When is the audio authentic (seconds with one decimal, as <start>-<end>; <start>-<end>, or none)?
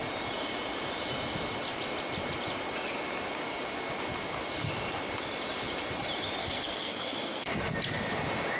0.0-6.4; 7.5-8.6